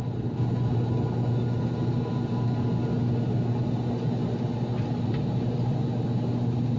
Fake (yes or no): no